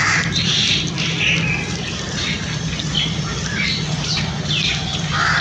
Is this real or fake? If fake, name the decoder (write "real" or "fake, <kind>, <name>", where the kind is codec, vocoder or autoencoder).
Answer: real